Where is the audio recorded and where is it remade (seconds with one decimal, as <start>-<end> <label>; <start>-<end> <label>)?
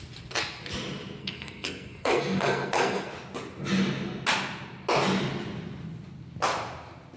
0.0-1.2 recorded; 1.2-3.1 remade; 3.1-7.2 recorded